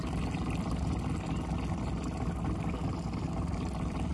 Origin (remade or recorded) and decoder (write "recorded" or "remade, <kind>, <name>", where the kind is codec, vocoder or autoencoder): recorded